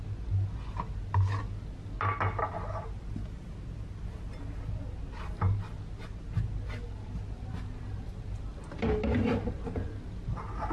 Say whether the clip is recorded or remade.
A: recorded